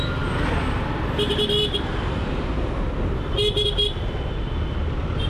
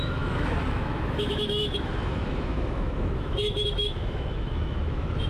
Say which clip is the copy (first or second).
second